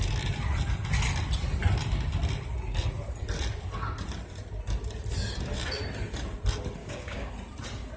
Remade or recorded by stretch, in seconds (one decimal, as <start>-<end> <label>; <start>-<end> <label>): 0.0-6.8 recorded; 6.8-7.3 remade; 7.3-8.0 recorded